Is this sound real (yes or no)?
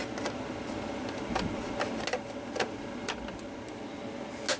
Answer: yes